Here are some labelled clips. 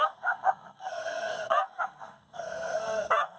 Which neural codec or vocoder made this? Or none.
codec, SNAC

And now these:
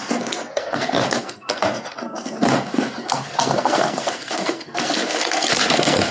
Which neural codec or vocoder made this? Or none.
codec, SNAC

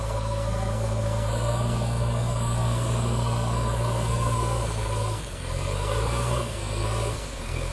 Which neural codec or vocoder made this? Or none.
codec, SNAC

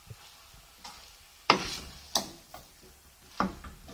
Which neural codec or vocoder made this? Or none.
none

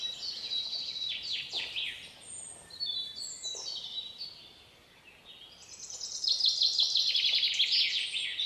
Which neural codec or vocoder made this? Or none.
none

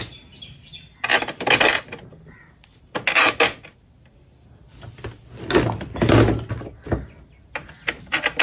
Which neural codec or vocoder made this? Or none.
none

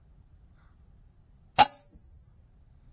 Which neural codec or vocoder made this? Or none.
none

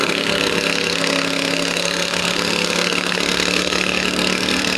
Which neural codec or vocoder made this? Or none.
codec, SNAC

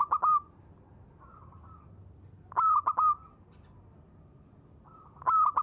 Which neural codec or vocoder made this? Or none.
none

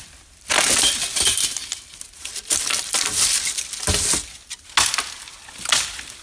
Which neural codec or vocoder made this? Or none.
none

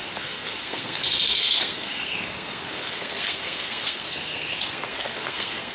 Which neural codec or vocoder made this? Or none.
codec, SNAC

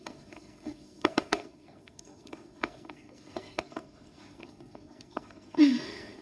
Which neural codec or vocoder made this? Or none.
codec, SNAC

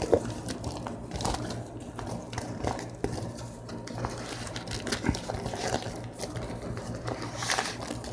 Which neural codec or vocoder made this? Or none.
none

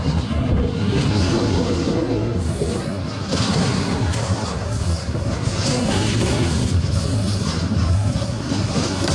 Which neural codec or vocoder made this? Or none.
codec, SNAC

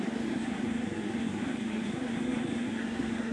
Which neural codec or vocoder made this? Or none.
codec, SNAC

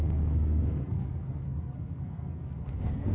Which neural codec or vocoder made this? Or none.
codec, SNAC